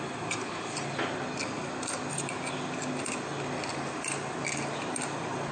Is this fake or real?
real